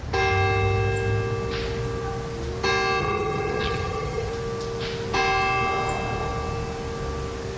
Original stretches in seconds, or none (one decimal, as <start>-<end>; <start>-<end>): 0.0-3.0; 4.3-7.6